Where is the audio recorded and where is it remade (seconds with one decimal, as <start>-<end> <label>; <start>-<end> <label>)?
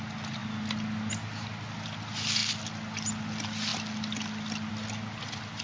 0.0-5.6 recorded